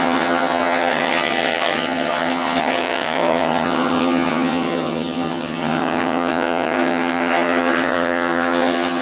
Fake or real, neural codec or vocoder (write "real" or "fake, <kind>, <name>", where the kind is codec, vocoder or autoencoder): fake, vocoder, HiFi-GAN